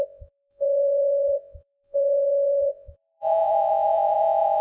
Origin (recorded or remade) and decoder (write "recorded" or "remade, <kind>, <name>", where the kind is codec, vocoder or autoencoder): remade, vocoder, Vocos